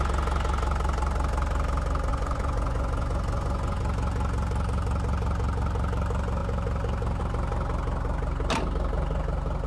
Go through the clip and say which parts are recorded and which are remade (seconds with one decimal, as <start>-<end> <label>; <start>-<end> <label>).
0.0-2.1 recorded; 2.1-3.8 remade; 3.8-9.7 recorded